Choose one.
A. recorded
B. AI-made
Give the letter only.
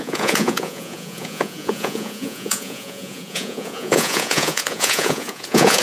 B